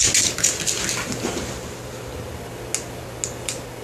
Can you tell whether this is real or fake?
real